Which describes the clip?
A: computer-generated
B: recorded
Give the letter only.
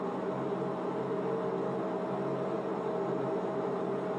B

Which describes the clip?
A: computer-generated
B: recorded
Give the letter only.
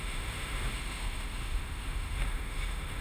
A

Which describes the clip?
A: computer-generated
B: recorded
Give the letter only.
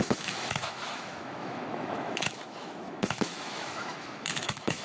A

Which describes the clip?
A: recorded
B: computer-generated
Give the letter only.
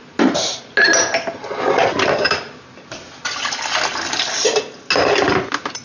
A